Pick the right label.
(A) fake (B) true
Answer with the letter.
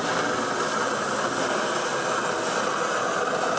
B